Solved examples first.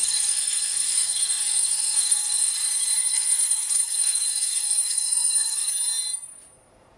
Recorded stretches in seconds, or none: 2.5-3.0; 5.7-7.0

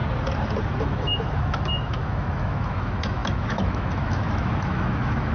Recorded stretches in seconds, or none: 0.0-0.8